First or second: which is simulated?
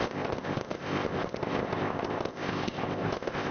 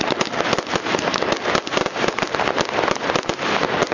first